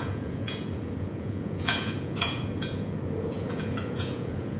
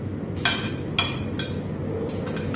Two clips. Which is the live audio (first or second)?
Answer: second